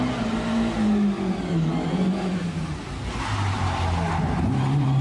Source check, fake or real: real